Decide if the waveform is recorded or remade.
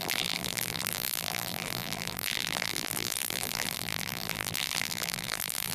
remade